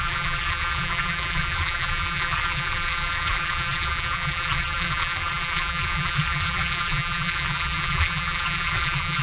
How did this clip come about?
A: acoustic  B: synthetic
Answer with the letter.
B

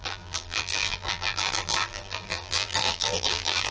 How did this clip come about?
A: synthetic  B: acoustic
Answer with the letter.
A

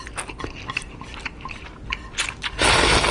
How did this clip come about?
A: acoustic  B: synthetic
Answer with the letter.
A